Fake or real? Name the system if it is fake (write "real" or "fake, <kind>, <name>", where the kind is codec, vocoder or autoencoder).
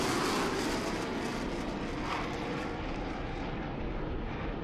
real